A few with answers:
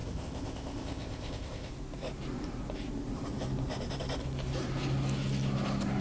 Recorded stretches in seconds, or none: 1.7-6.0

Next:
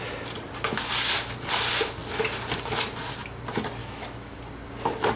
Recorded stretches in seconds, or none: 0.0-3.8; 4.4-5.2

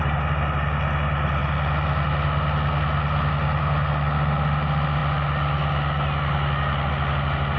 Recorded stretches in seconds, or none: 0.0-7.6